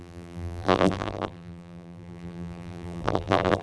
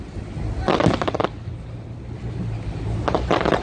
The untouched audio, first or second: second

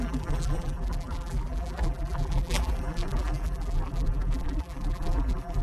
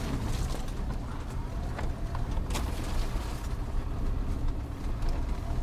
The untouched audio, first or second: second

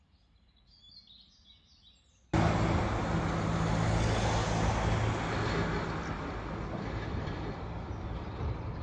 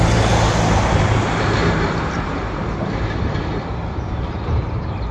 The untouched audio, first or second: first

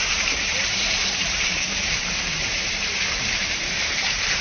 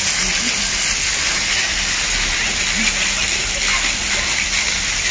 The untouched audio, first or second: second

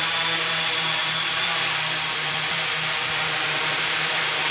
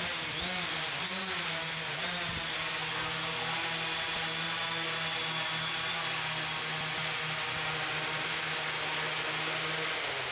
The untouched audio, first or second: second